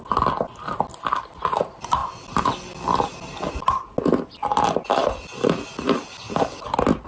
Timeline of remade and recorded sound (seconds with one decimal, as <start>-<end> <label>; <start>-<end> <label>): 0.0-7.1 recorded